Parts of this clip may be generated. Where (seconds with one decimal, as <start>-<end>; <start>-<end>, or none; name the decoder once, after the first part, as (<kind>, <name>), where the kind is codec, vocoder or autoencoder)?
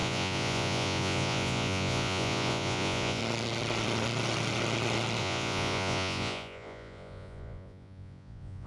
0.0-3.2 (vocoder, Vocos); 5.2-8.7